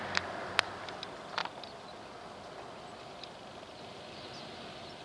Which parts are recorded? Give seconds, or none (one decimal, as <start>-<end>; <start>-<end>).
0.0-5.0